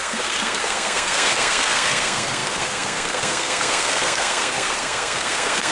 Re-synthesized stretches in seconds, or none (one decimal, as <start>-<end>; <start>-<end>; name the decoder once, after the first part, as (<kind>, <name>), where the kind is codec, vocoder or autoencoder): 0.0-5.7 (codec, SNAC)